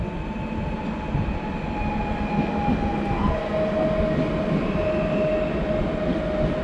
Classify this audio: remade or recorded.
recorded